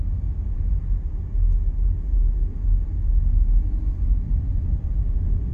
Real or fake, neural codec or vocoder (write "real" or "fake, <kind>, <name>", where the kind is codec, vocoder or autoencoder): real